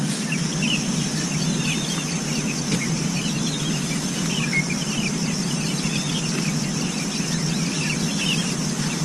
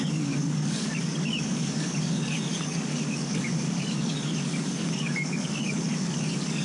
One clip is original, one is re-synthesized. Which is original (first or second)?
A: first